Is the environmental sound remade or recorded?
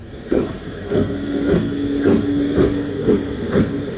remade